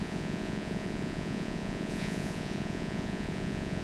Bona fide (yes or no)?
no